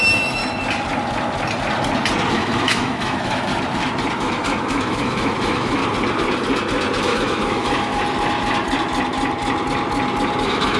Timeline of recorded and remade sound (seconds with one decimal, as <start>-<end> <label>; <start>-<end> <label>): 0.0-0.4 remade; 0.4-2.3 recorded; 2.3-3.5 remade; 3.5-4.2 recorded; 4.2-5.8 remade; 5.8-7.0 recorded; 7.0-7.9 remade; 7.9-10.4 recorded; 10.4-10.8 remade